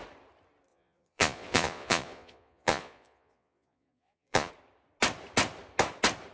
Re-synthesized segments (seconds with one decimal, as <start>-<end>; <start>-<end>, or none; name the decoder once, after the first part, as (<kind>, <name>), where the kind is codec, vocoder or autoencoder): 0.7-4.5 (vocoder, Vocos)